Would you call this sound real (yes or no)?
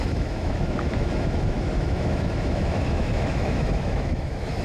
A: no